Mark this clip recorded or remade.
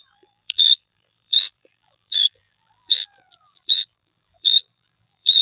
remade